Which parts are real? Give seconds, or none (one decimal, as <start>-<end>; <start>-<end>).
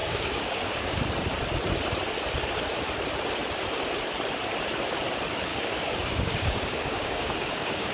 1.0-5.5